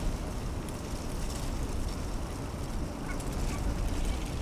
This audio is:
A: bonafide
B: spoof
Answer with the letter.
A